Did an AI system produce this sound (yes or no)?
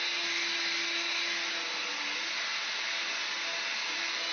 no